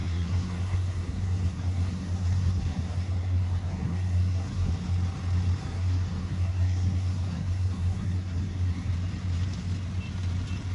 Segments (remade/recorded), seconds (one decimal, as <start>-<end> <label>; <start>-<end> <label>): 0.0-4.7 remade; 4.7-5.6 recorded; 5.6-8.9 remade; 8.9-10.7 recorded

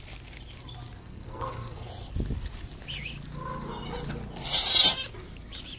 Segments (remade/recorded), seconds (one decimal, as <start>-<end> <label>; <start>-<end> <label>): 0.0-1.0 recorded; 1.0-1.9 remade; 1.9-5.8 recorded

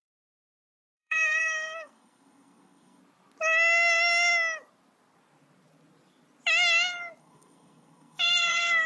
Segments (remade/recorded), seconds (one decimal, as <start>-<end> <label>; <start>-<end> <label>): 0.0-3.0 remade; 3.0-7.2 recorded; 7.2-8.9 remade

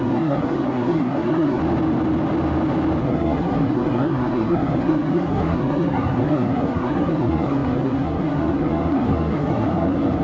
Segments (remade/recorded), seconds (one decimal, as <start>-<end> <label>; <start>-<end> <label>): 0.0-1.6 remade; 1.6-3.0 recorded; 3.0-10.2 remade

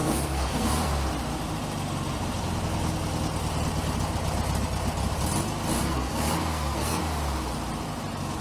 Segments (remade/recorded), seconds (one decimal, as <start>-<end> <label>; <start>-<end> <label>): 0.0-0.9 remade; 0.9-5.8 recorded; 5.8-7.0 remade; 7.0-8.4 recorded

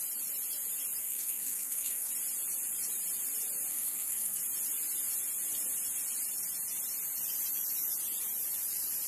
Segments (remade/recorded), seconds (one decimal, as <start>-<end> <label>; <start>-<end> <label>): 0.0-1.0 recorded; 1.0-2.1 remade; 2.1-3.7 recorded; 3.7-4.4 remade; 4.4-9.1 recorded

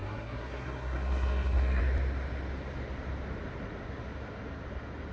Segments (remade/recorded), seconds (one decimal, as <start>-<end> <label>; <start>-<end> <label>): 0.0-1.8 remade; 1.8-5.1 recorded